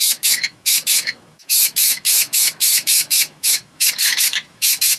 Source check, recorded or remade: remade